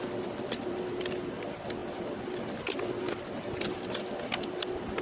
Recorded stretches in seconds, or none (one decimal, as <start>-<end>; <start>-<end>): 0.0-5.0